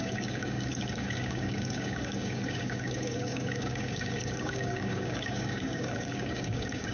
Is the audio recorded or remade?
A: remade